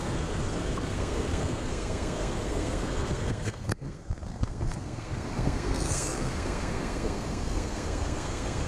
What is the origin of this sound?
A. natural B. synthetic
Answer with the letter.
B